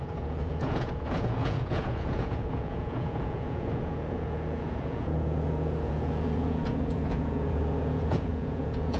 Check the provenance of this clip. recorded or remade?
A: remade